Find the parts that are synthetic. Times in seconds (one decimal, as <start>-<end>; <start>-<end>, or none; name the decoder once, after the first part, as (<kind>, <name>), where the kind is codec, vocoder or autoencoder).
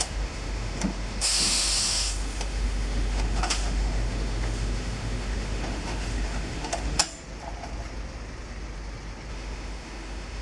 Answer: 0.0-7.0 (autoencoder, DAC-VAE); 9.3-10.4